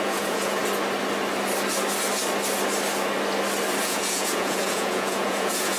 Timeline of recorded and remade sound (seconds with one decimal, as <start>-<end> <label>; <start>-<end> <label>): 0.0-0.6 remade; 0.6-3.8 recorded; 3.8-5.8 remade